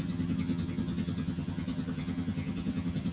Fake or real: fake